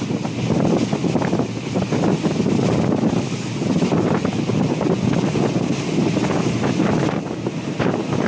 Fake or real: real